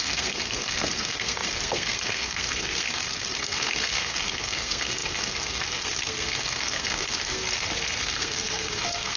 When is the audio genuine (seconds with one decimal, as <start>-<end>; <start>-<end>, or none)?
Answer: 7.4-8.0